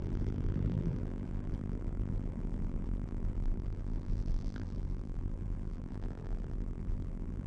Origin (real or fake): fake